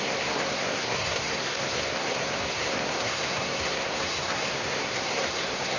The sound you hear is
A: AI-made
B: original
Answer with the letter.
A